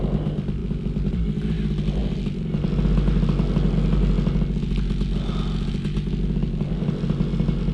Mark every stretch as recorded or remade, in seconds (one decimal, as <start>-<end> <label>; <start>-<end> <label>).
0.0-7.7 recorded